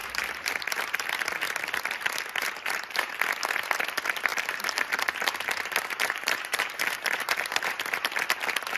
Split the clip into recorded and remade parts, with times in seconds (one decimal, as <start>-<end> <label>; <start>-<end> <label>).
0.0-0.5 remade; 0.5-2.4 recorded; 2.4-3.1 remade; 3.1-4.3 recorded; 4.3-7.8 remade; 7.8-8.8 recorded